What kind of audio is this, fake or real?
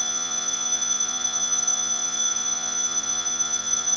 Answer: fake